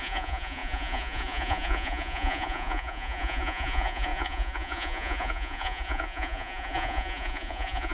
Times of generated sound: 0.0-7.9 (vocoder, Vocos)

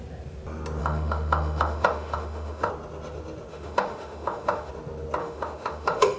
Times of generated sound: 0.8-2.7 (autoencoder, DAC-VAE); 3.5-4.7; 5.2-6.2

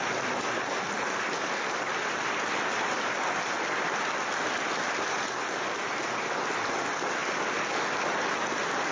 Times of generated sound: none

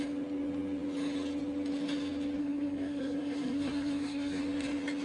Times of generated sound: 2.4-4.4 (codec, SNAC)

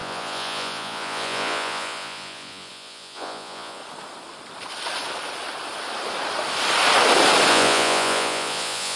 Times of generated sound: 0.0-3.8 (vocoder, Vocos); 7.5-9.0

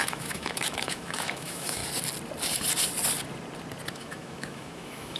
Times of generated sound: 0.0-1.8 (autoencoder, DAC-VAE); 3.9-5.2